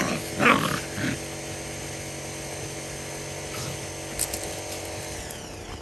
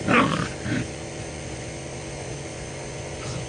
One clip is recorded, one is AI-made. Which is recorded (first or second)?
first